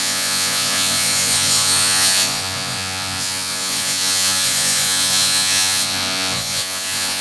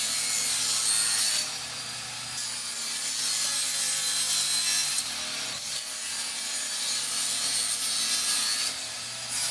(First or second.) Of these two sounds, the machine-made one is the first